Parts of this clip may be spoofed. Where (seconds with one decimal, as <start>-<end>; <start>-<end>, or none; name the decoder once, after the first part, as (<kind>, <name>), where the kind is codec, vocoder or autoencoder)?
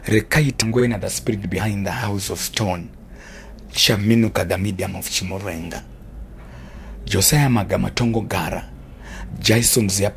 2.0-2.8 (autoencoder, DAC-VAE); 4.0-5.8